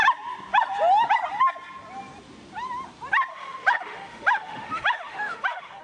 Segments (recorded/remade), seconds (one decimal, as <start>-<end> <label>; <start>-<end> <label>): 0.0-3.3 recorded; 3.3-5.8 remade